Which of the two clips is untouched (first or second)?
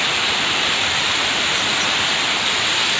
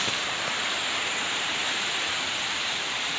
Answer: first